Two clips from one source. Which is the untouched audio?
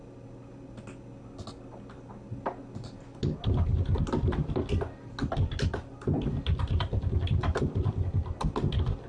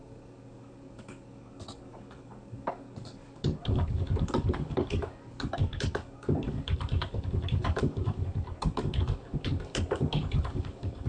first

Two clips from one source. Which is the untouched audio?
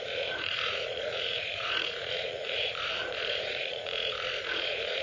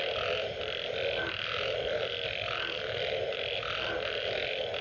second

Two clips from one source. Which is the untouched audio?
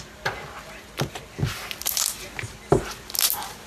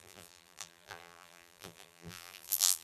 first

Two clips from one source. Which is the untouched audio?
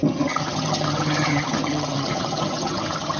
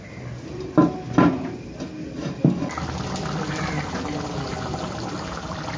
second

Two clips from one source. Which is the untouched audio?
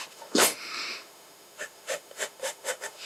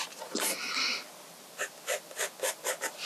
second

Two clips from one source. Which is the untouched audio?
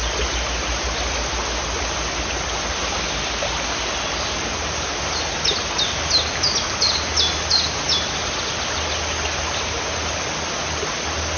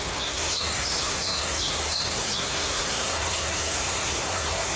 first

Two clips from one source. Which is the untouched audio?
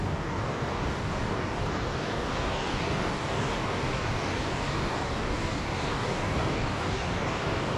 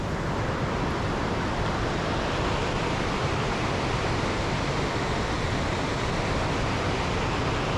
second